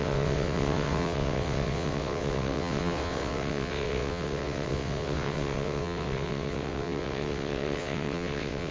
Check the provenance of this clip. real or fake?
fake